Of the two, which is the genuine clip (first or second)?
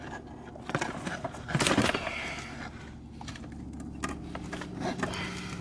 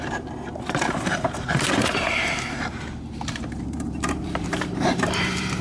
first